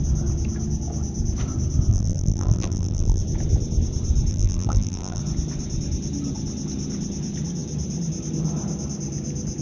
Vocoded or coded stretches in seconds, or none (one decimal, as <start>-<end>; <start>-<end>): 1.9-3.2; 4.3-5.2